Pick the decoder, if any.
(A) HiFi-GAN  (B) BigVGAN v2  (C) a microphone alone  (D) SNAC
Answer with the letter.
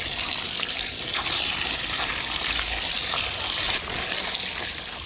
C